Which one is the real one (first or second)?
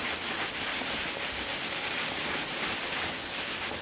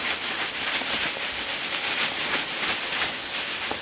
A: first